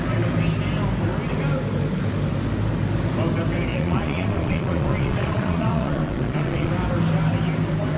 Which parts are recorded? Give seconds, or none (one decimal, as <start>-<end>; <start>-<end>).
0.0-3.7; 6.7-8.0